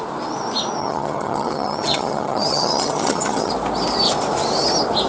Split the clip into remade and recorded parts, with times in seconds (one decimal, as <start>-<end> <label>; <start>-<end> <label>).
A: 0.0-0.8 recorded; 0.8-3.5 remade; 3.5-5.1 recorded